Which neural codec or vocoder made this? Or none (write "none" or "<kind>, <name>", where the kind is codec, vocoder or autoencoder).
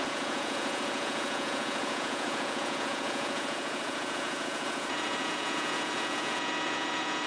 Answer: vocoder, Vocos